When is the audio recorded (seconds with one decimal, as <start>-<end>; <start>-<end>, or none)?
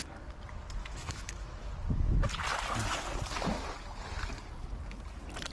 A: 0.0-0.8; 1.7-5.5